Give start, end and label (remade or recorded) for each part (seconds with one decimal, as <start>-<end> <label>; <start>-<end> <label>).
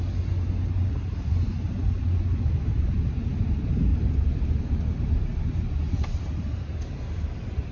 0.0-7.7 recorded